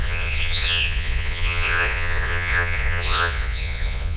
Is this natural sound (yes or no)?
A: no